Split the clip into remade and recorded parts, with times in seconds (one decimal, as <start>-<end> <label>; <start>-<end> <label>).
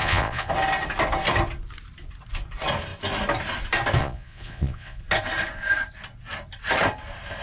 0.0-0.5 remade; 0.5-4.0 recorded; 4.0-5.0 remade; 5.0-7.4 recorded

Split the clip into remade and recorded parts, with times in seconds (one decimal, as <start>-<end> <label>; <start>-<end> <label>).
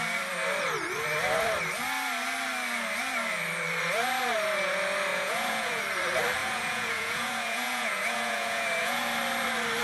0.0-5.1 recorded; 5.1-5.8 remade; 5.8-6.4 recorded; 6.4-9.0 remade; 9.0-9.8 recorded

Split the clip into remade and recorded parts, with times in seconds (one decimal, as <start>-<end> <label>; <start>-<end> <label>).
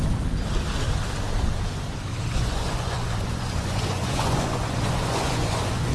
0.0-2.1 recorded; 2.1-5.9 remade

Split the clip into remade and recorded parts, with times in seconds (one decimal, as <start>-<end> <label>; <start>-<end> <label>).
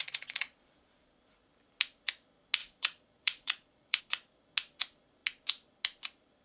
0.0-1.2 remade; 1.2-2.6 recorded; 2.6-4.0 remade; 4.0-6.4 recorded